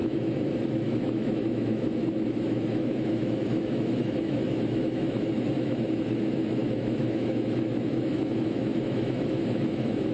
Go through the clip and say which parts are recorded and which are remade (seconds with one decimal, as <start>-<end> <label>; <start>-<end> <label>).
0.0-10.1 remade